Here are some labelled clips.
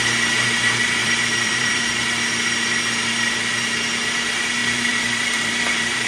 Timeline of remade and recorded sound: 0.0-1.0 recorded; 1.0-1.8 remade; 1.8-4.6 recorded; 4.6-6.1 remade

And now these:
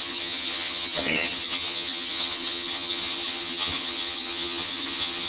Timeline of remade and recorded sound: 0.0-5.3 remade

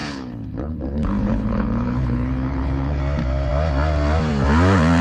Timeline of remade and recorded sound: 0.0-3.0 remade; 3.0-5.0 recorded

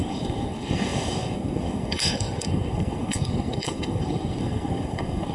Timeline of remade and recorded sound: 0.0-5.3 remade

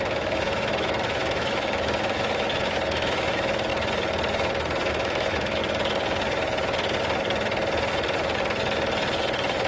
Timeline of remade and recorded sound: 0.0-3.7 remade; 3.7-4.9 recorded; 4.9-5.6 remade; 5.6-9.7 recorded

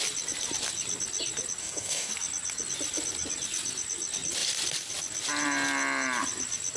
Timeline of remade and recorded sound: 0.0-1.6 recorded; 1.6-2.1 remade; 2.1-6.8 recorded